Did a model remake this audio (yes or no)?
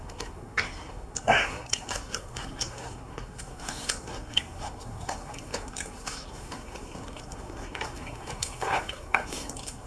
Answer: yes